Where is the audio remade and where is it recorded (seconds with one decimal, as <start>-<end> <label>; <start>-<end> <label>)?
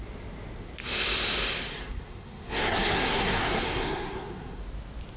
0.0-1.7 recorded; 1.7-4.6 remade; 4.6-5.2 recorded